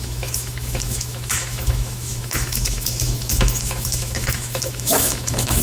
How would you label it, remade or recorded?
remade